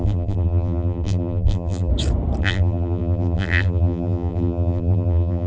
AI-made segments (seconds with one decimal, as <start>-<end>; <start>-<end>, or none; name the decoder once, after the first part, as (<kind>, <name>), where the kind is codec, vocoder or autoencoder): 0.0-1.9 (vocoder, BigVGAN v2); 2.4-5.5